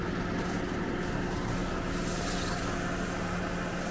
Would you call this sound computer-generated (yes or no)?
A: no